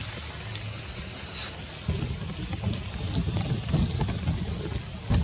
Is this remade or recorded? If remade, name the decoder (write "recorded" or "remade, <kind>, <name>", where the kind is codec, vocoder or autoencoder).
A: recorded